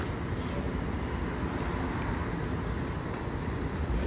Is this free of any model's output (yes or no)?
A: yes